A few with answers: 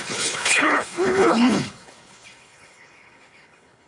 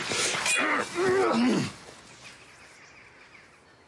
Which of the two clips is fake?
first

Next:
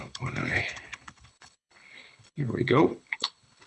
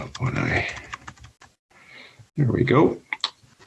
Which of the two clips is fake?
first